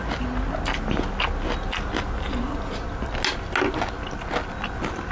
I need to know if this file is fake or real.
real